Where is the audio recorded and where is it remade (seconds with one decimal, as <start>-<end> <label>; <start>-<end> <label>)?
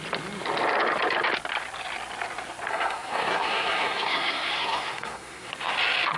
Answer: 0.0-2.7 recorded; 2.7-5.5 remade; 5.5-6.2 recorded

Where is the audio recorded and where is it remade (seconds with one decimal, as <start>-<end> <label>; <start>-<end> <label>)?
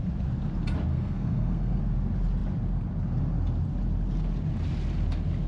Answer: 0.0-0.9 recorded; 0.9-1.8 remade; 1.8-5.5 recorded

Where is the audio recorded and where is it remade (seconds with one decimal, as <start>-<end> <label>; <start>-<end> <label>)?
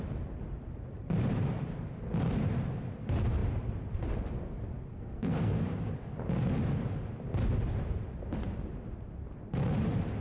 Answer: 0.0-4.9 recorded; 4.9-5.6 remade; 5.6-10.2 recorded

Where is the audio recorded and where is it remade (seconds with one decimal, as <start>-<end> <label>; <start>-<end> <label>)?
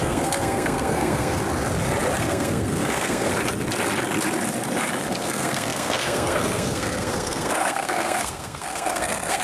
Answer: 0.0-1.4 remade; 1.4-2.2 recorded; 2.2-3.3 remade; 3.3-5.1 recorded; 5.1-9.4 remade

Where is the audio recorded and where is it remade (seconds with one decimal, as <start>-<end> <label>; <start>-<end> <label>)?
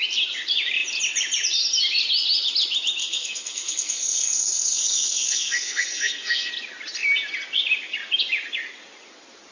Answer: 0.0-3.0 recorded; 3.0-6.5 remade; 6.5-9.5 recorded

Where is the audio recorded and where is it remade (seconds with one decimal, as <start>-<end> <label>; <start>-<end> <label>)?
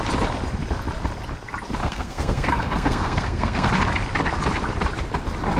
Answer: 0.0-1.8 recorded; 1.8-3.7 remade; 3.7-5.6 recorded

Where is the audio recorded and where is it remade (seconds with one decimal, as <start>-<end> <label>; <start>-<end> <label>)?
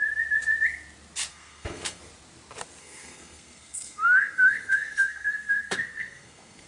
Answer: 0.0-1.3 recorded; 1.3-2.0 remade; 2.0-2.8 recorded; 2.8-6.7 remade